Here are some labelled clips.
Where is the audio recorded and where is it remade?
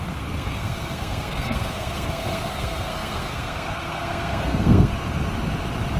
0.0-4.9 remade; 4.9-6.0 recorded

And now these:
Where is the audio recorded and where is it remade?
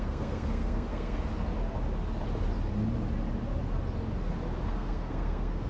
0.0-1.3 remade; 1.3-4.7 recorded; 4.7-5.7 remade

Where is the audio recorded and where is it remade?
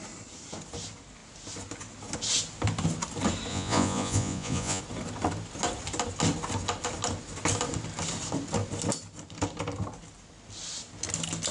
0.0-3.5 recorded; 3.5-4.8 remade; 4.8-11.5 recorded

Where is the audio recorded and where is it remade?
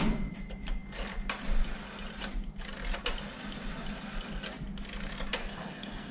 0.0-5.4 recorded; 5.4-6.1 remade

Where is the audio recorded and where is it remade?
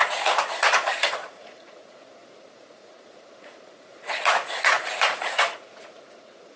0.0-6.6 remade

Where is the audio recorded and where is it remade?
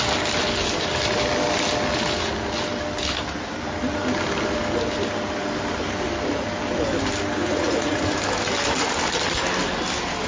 0.0-7.4 recorded; 7.4-8.1 remade; 8.1-10.3 recorded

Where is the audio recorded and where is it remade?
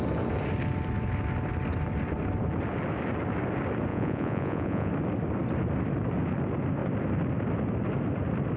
0.0-3.9 recorded; 3.9-4.9 remade; 4.9-8.6 recorded